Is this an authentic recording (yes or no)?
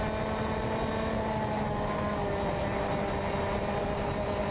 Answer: yes